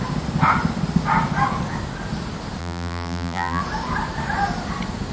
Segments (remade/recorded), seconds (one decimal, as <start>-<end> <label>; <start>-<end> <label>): 0.0-2.6 recorded; 2.6-3.6 remade; 3.6-5.1 recorded